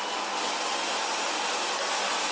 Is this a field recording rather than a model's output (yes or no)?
yes